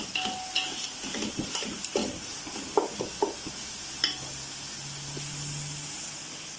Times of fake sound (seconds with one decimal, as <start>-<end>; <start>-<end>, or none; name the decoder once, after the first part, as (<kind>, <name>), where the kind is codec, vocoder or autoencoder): none